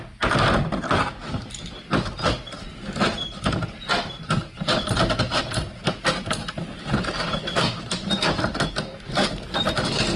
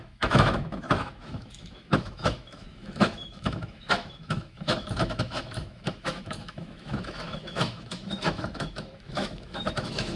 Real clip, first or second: first